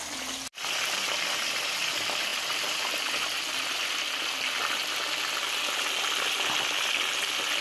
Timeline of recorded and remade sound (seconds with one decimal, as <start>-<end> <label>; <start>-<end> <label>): 0.0-7.6 recorded